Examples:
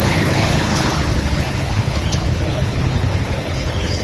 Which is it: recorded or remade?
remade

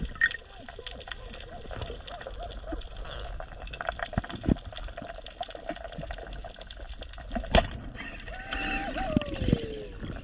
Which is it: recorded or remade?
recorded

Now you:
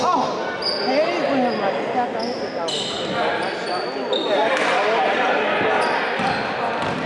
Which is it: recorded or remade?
recorded